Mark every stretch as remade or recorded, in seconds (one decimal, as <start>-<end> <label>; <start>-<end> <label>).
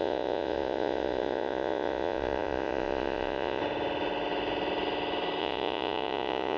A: 0.0-3.6 remade; 3.6-5.4 recorded; 5.4-6.6 remade